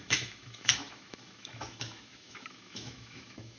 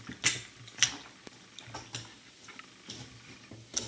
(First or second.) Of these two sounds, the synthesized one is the first